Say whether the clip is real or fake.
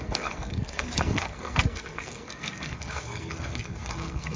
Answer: fake